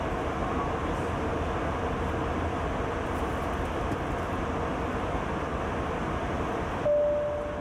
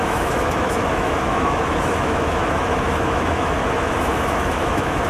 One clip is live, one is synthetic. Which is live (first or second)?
first